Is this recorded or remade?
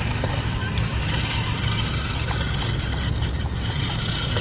recorded